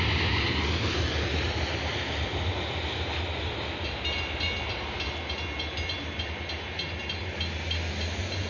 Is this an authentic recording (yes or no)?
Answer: yes